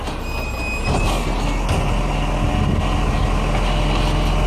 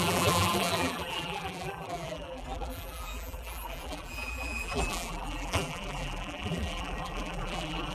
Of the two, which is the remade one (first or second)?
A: second